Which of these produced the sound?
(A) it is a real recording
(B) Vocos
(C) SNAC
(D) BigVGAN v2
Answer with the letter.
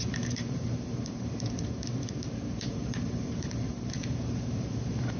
D